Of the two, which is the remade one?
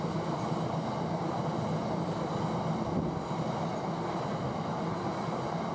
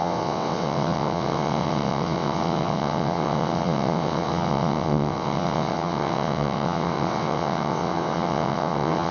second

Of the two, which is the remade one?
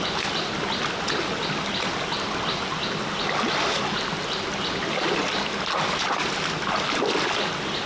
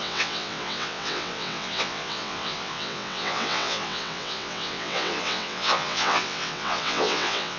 second